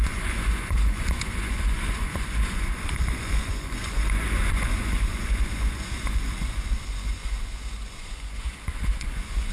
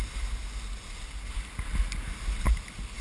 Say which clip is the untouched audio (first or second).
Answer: second